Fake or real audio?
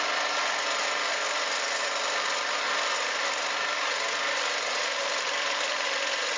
real